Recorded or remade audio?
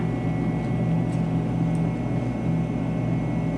recorded